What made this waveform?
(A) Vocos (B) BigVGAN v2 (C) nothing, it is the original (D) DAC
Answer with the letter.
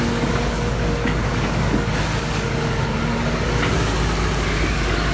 D